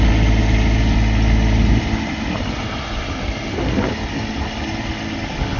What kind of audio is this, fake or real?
real